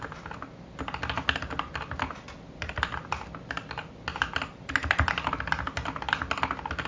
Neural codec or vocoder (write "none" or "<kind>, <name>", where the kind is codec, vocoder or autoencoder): none